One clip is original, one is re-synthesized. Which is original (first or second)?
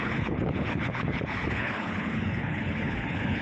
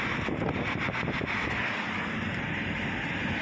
second